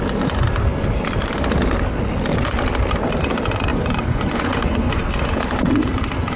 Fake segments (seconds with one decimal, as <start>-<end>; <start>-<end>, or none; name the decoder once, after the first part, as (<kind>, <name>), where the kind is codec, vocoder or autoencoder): 3.7-5.0 (vocoder, Vocos)

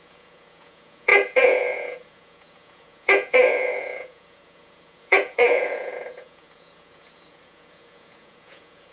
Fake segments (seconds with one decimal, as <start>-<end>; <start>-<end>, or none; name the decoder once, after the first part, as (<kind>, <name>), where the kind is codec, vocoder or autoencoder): 0.0-8.9 (vocoder, Vocos)

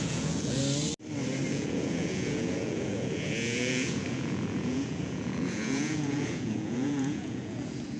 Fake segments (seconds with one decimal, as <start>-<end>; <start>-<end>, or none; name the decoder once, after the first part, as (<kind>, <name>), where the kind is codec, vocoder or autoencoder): 0.0-0.6 (vocoder, Vocos); 1.5-8.0

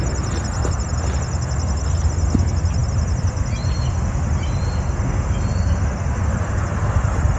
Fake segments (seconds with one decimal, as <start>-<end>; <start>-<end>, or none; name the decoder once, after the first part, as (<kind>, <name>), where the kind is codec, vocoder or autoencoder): none

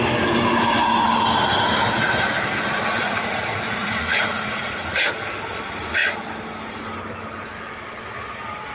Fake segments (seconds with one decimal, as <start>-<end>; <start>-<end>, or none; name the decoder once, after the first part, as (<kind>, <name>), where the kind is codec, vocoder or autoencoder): 2.9-5.1 (vocoder, Vocos)

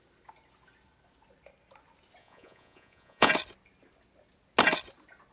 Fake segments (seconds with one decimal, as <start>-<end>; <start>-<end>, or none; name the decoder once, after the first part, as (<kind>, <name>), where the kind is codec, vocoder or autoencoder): 2.2-3.3 (vocoder, Vocos)